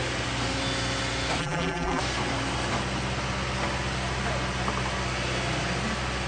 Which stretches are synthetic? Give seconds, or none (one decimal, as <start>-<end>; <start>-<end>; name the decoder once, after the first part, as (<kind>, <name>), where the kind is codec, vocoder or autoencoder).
1.4-2.0 (vocoder, BigVGAN v2)